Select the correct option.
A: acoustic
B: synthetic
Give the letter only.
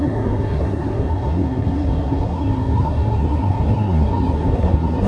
B